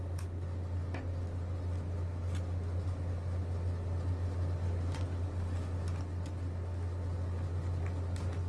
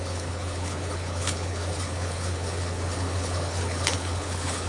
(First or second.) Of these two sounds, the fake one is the second